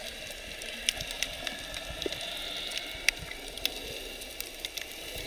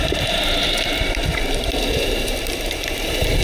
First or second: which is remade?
second